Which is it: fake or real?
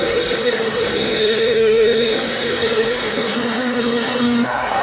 fake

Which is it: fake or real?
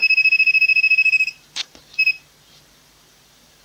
fake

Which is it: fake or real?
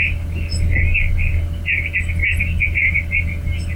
real